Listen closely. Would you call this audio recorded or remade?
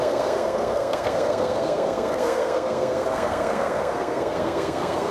remade